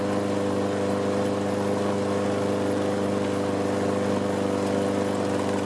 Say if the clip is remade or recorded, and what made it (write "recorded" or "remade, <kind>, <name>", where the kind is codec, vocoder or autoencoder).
recorded